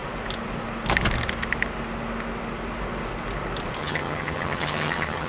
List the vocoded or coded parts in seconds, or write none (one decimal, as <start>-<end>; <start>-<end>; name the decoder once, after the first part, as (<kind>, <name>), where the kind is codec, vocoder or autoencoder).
3.8-5.3 (vocoder, HiFi-GAN)